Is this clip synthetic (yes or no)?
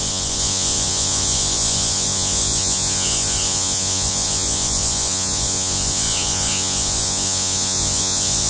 yes